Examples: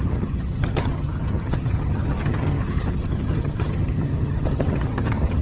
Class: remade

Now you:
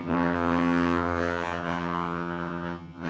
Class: remade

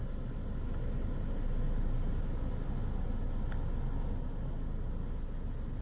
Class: recorded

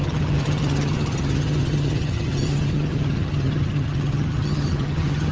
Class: remade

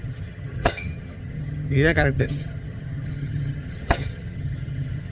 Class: remade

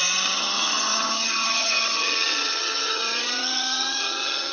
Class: remade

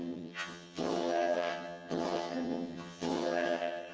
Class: remade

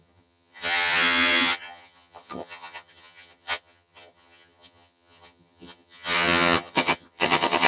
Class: remade